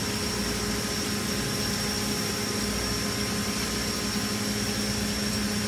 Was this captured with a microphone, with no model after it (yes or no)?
yes